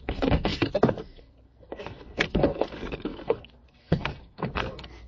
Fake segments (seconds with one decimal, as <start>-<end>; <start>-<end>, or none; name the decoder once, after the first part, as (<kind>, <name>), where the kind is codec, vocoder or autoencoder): 0.0-5.1 (codec, SNAC)